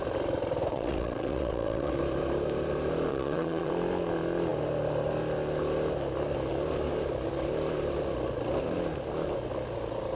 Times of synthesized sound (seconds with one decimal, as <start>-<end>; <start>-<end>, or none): 0.7-2.0; 3.1-3.7